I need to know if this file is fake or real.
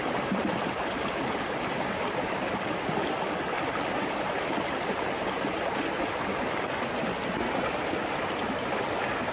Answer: real